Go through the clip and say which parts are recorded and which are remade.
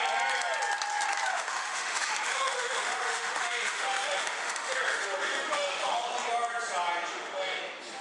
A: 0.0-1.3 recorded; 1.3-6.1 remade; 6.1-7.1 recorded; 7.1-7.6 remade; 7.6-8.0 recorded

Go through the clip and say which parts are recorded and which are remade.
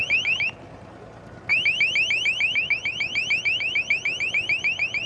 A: 0.0-5.1 recorded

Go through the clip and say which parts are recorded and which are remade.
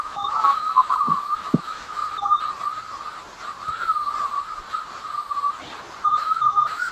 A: 0.0-2.0 remade; 2.0-6.1 recorded; 6.1-6.9 remade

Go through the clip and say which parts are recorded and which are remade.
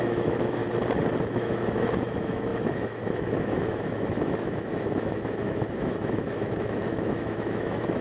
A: 0.0-0.6 remade; 0.6-1.3 recorded; 1.3-8.0 remade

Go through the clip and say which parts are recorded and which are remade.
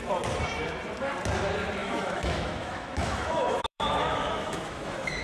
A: 0.0-1.8 recorded; 1.8-5.2 remade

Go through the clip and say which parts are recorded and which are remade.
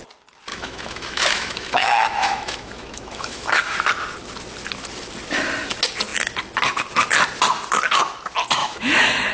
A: 0.0-0.5 recorded; 0.5-3.9 remade; 3.9-8.6 recorded; 8.6-9.3 remade